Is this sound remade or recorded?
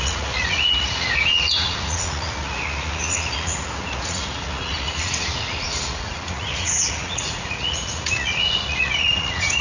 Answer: remade